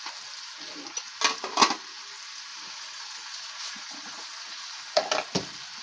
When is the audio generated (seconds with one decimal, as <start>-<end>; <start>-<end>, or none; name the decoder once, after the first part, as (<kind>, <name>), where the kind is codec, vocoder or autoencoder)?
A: 2.5-5.0 (vocoder, Vocos)